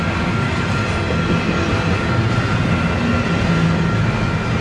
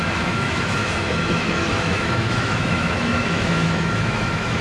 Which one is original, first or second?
first